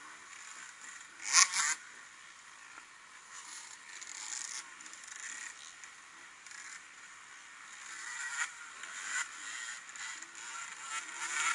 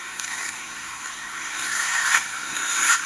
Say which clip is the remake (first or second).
second